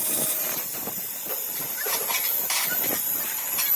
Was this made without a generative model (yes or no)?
no